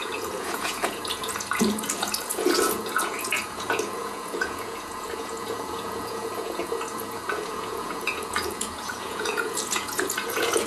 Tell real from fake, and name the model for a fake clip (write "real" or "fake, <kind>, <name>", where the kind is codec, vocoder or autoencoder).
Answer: fake, vocoder, Vocos